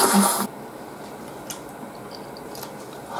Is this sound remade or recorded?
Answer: recorded